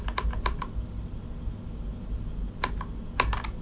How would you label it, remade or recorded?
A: recorded